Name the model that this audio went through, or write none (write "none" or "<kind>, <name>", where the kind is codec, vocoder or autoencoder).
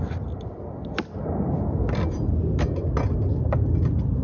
none